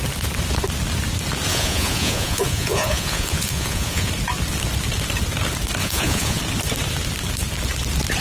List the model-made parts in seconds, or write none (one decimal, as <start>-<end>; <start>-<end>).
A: 1.5-4.1; 5.8-6.4